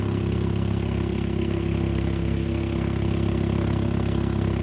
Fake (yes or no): yes